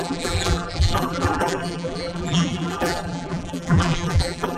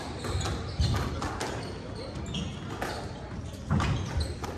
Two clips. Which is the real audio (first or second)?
second